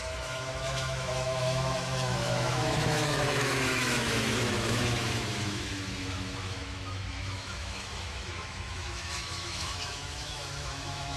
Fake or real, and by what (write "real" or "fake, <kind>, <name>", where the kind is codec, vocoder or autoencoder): fake, autoencoder, DAC-VAE